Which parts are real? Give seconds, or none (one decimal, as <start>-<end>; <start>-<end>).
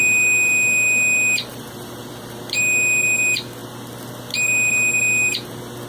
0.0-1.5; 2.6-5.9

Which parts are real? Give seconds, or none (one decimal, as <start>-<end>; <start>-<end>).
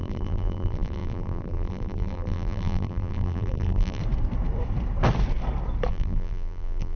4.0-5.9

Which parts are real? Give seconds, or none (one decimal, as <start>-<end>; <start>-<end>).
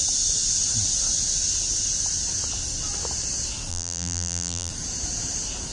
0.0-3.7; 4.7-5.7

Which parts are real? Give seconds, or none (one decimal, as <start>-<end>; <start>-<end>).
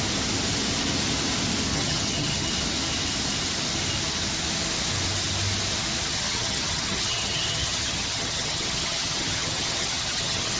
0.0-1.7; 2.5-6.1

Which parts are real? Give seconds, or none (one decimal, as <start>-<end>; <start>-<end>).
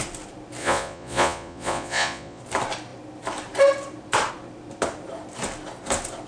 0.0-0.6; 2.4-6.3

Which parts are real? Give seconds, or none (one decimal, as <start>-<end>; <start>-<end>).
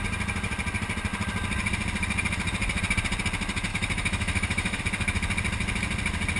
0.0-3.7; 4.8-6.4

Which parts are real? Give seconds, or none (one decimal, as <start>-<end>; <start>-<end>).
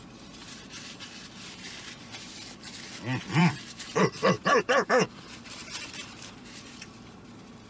0.0-3.4; 7.2-7.7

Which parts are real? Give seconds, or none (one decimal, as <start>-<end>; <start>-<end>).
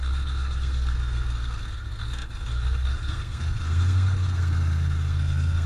none